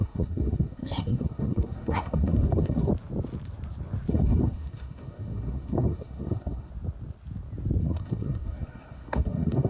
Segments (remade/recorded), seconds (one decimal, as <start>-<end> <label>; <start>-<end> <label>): 0.0-2.9 remade; 2.9-4.1 recorded; 4.1-6.7 remade; 6.7-7.8 recorded; 7.8-9.7 remade